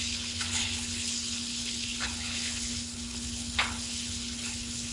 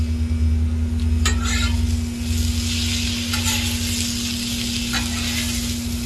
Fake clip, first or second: first